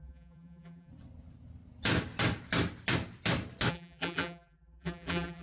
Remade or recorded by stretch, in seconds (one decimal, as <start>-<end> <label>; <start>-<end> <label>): 0.0-0.9 remade; 0.9-3.7 recorded; 3.7-5.4 remade